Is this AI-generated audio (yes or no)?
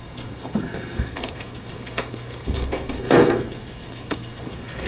yes